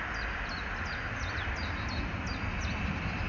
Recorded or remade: recorded